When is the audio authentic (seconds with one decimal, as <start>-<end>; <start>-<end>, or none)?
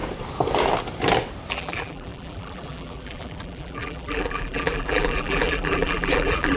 0.0-1.5